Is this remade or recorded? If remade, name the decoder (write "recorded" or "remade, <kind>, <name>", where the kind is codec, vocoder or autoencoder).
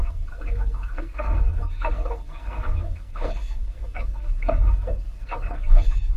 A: remade, codec, SNAC